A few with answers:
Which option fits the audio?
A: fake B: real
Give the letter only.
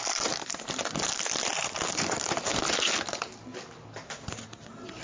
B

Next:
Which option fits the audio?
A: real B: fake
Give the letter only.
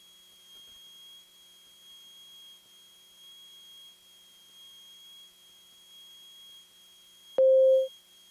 A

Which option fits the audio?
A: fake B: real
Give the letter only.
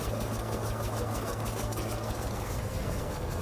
A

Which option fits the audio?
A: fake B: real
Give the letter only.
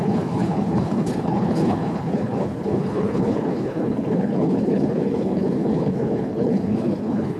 A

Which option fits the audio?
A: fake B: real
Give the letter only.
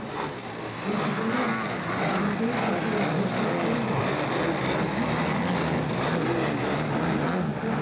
B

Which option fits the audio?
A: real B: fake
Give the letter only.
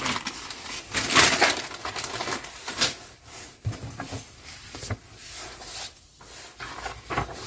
A